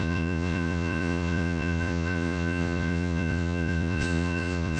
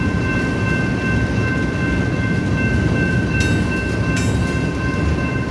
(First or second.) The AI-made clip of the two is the first